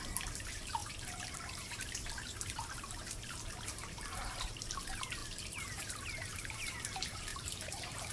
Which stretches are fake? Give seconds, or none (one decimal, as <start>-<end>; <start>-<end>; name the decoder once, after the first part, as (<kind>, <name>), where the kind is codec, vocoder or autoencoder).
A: 0.0-8.1 (vocoder, BigVGAN v2)